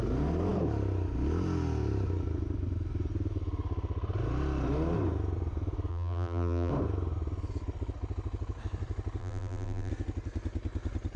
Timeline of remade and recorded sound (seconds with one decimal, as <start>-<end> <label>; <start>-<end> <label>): 0.0-5.9 recorded; 5.9-6.7 remade; 6.7-9.2 recorded; 9.2-9.9 remade; 9.9-11.2 recorded